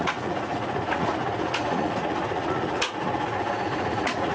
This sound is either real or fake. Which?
fake